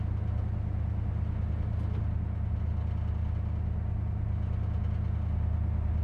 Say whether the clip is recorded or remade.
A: recorded